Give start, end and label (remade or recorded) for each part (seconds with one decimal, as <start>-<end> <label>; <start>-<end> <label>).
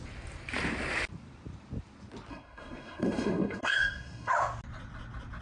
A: 0.0-2.3 recorded; 2.3-4.3 remade; 4.3-5.4 recorded